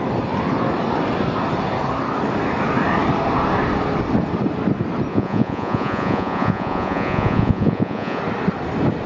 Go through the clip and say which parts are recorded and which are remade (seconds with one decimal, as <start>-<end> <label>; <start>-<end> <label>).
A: 0.0-5.1 recorded; 5.1-8.2 remade; 8.2-9.1 recorded